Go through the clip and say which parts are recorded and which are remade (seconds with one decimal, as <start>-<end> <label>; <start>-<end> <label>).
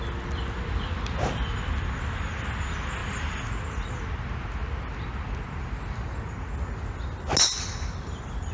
0.0-8.5 recorded